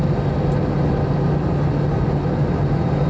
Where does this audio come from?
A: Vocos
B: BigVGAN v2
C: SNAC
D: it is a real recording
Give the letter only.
D